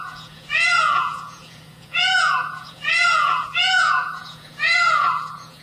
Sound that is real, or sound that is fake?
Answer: fake